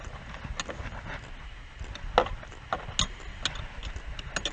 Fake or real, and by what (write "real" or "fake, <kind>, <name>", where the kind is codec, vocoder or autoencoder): real